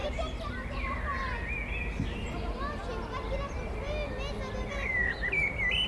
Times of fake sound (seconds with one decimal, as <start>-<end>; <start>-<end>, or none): 0.0-1.1; 2.0-2.9; 4.7-5.9